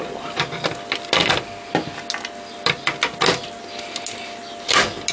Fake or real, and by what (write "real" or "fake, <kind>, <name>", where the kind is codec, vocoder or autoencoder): real